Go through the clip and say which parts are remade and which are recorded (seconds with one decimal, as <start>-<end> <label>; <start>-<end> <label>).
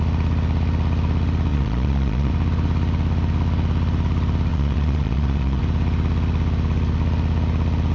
0.0-1.5 recorded; 1.5-2.3 remade; 2.3-4.5 recorded; 4.5-5.6 remade; 5.6-7.9 recorded